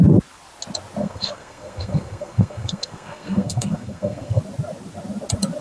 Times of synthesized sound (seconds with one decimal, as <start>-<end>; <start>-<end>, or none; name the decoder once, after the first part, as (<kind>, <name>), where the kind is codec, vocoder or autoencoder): 1.0-4.4 (codec, SNAC)